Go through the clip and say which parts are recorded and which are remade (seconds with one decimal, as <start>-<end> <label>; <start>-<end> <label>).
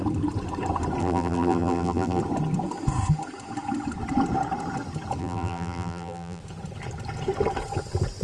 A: 0.0-1.0 recorded; 1.0-2.2 remade; 2.2-5.2 recorded; 5.2-6.4 remade; 6.4-8.2 recorded